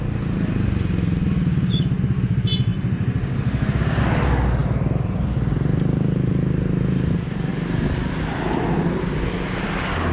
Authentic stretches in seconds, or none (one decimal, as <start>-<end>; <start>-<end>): 0.0-10.1